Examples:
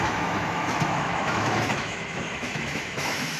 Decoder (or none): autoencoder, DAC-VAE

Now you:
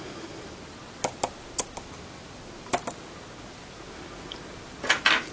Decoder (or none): none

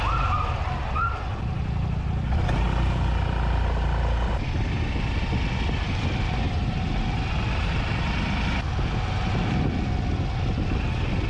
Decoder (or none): none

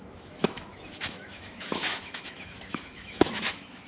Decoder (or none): autoencoder, DAC-VAE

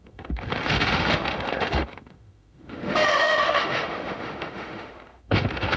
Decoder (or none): autoencoder, DAC-VAE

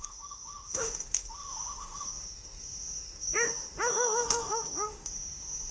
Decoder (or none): autoencoder, DAC-VAE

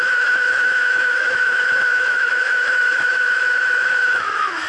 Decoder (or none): autoencoder, DAC-VAE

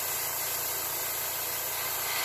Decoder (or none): none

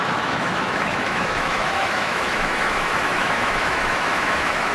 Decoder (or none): autoencoder, DAC-VAE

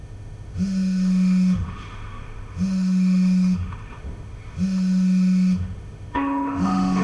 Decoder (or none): autoencoder, DAC-VAE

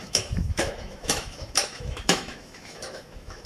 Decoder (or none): autoencoder, DAC-VAE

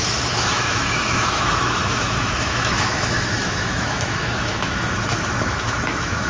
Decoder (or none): autoencoder, DAC-VAE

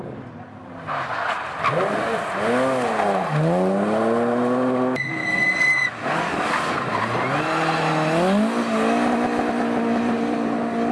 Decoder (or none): none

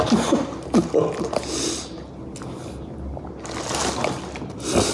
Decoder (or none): none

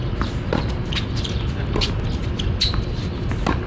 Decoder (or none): none